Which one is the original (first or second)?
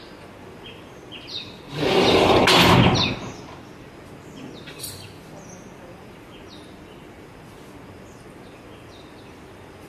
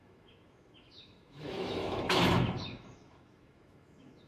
first